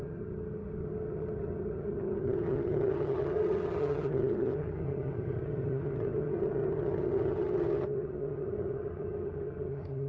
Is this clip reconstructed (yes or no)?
yes